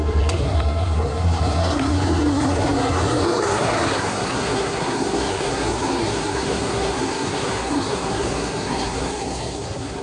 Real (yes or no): no